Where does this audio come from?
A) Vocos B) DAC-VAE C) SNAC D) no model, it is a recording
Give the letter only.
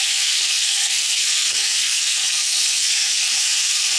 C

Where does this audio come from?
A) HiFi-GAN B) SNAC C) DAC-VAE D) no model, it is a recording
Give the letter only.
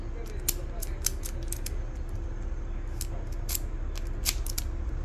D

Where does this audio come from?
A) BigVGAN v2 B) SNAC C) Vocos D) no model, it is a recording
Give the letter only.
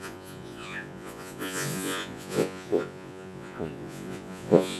C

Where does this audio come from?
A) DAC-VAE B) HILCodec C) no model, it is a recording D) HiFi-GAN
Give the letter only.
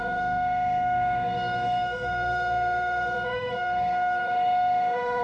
A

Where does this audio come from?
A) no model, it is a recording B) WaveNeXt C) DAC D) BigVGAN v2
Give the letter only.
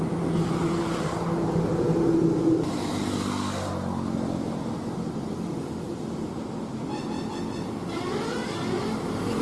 A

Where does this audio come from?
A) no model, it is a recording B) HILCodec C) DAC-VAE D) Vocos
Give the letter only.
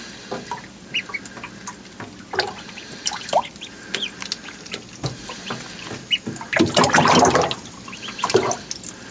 A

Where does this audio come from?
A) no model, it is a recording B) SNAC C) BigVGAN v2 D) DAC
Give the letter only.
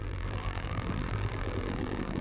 C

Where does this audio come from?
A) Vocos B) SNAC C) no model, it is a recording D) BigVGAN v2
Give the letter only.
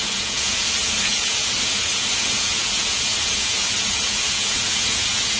A